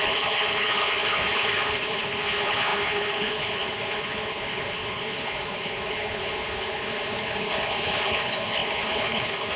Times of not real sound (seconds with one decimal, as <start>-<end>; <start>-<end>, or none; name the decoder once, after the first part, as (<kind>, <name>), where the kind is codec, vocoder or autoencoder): 0.0-9.6 (codec, HILCodec)